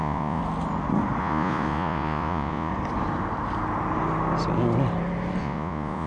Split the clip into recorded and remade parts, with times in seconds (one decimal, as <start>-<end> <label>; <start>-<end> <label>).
0.0-0.4 remade; 0.4-1.2 recorded; 1.2-2.7 remade; 2.7-5.4 recorded; 5.4-6.1 remade